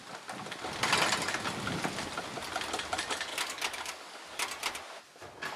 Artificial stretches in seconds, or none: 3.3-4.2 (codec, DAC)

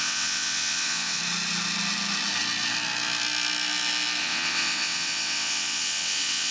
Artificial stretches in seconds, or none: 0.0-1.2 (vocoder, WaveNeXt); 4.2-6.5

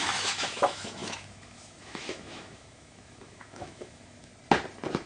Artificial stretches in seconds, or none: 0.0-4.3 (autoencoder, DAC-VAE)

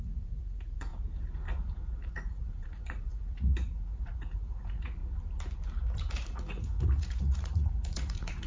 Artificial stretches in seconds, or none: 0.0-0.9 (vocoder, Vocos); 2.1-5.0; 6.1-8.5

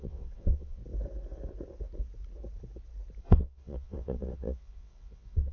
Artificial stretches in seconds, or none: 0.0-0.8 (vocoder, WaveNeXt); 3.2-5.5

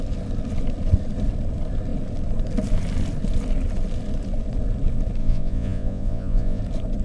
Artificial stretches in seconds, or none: 5.2-6.6 (vocoder, Vocos)

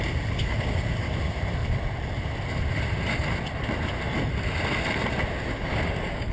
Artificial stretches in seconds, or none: 0.4-1.1 (codec, DAC); 5.5-6.3

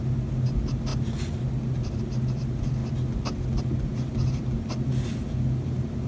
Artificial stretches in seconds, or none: none